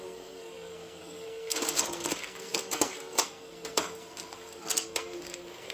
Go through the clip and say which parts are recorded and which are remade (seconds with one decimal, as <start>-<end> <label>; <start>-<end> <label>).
0.0-5.7 remade